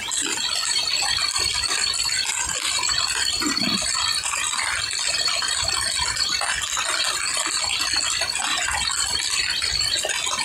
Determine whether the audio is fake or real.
real